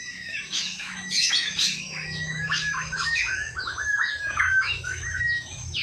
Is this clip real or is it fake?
fake